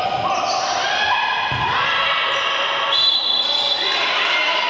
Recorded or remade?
recorded